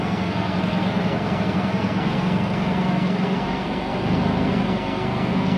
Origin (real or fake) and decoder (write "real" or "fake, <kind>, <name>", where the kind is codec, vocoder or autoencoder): fake, codec, SNAC